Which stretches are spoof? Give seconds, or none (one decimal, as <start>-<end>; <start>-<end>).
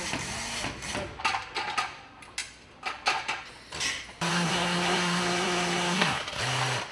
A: 4.3-6.4